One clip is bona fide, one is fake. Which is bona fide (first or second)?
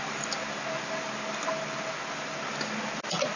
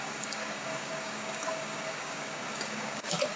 first